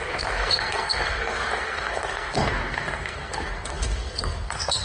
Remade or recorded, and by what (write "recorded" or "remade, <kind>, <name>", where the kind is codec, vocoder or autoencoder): remade, codec, SNAC